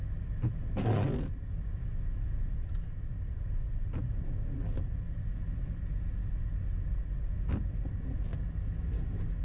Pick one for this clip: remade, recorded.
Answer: recorded